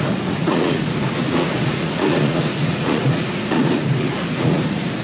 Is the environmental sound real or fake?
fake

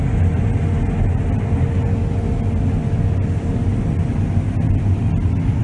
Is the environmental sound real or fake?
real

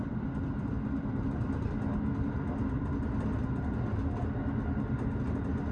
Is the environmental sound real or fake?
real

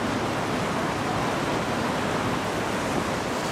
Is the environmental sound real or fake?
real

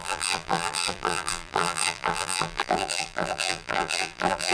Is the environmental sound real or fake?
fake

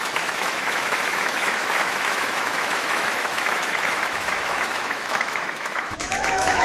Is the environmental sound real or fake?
fake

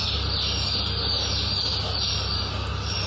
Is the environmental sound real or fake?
real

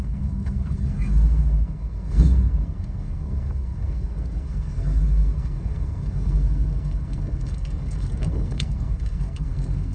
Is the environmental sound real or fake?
fake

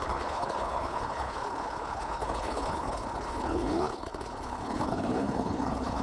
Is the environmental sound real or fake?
fake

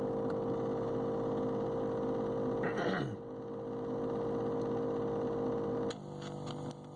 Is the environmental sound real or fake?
real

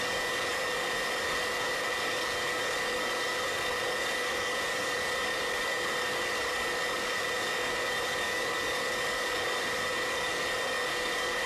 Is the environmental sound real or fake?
fake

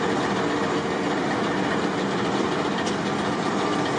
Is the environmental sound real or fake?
real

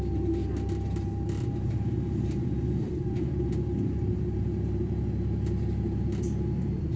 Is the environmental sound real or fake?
real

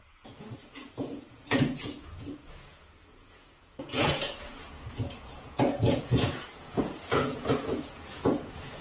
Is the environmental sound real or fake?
fake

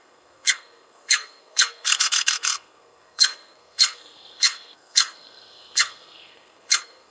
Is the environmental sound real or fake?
fake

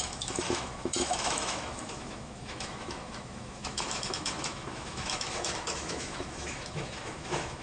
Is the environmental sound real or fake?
fake